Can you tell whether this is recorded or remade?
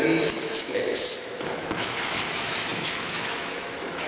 remade